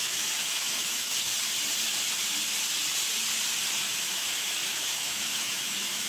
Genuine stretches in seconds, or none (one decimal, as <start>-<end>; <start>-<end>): 1.3-4.0